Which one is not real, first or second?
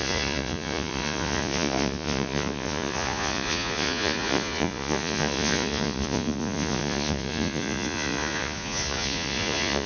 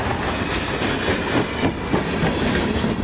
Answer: first